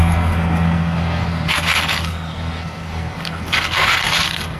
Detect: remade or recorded remade